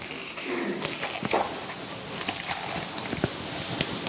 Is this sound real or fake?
real